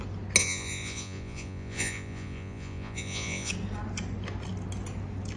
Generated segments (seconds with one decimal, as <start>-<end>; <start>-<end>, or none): 0.4-3.5